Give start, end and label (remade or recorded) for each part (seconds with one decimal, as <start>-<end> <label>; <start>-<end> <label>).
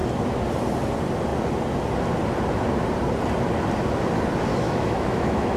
0.0-4.5 recorded; 4.5-5.6 remade